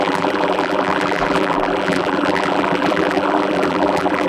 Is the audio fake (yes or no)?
yes